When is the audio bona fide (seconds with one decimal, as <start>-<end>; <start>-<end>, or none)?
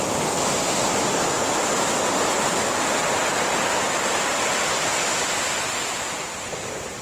3.0-3.6; 5.1-6.4